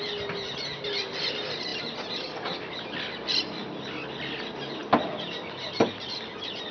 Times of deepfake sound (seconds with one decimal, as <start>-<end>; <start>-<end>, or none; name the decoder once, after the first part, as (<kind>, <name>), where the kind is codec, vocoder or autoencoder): none